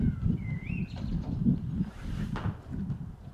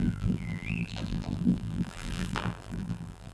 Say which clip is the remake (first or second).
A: second